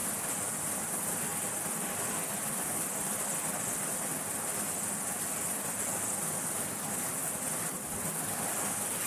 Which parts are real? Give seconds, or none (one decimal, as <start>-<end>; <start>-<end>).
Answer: 0.0-9.1